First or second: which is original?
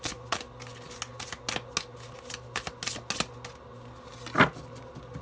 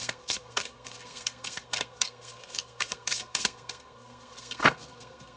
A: first